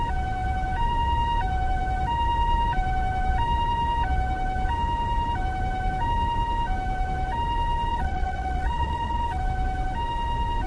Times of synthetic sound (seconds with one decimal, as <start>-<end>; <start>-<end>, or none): 7.9-9.4